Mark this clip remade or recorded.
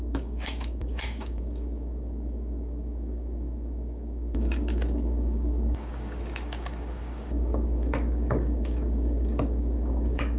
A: remade